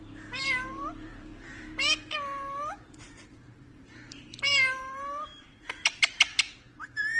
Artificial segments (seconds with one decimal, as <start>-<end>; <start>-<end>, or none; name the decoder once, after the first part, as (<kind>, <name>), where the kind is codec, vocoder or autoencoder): 0.0-1.3 (vocoder, BigVGAN v2); 2.7-5.3; 6.4-7.2